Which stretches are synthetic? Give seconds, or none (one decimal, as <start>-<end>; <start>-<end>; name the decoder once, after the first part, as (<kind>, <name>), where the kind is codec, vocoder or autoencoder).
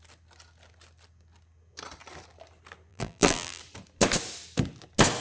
2.9-3.6 (vocoder, BigVGAN v2)